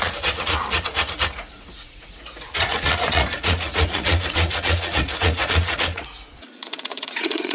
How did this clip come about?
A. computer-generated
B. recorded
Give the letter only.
A